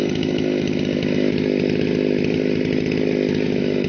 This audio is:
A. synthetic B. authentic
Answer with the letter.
B